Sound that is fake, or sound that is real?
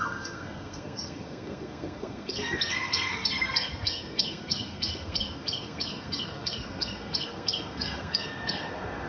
fake